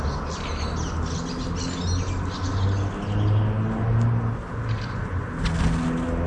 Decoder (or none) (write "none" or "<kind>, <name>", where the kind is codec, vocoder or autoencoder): none